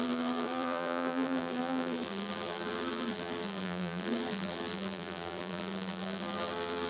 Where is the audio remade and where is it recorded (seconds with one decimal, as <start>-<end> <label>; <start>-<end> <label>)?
0.0-6.9 remade